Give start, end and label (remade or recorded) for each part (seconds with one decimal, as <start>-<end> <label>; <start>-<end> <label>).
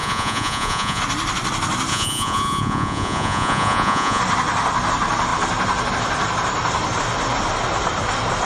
0.0-1.0 remade; 1.0-1.9 recorded; 1.9-4.2 remade; 4.2-8.4 recorded